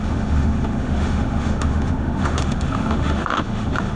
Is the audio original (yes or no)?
no